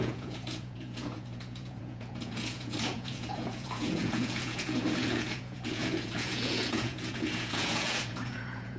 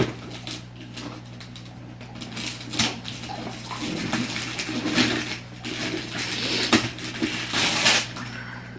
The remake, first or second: first